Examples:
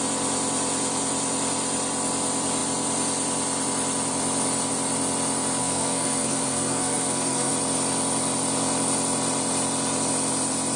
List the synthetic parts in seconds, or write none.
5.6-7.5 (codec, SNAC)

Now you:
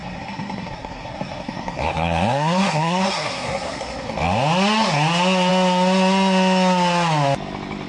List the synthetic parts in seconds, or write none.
0.0-4.1 (codec, SNAC)